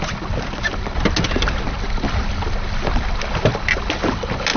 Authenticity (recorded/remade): recorded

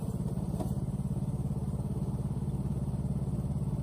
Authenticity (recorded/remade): remade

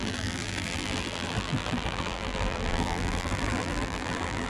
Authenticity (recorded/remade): remade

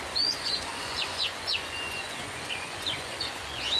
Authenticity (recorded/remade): remade